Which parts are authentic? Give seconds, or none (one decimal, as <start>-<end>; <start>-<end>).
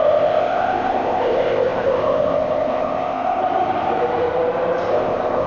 3.4-4.9